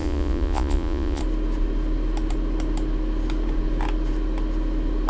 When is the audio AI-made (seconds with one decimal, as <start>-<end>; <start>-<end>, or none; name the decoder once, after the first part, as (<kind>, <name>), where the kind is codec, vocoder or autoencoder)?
0.0-1.2 (vocoder, Vocos)